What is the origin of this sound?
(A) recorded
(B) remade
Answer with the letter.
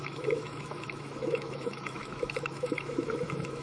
B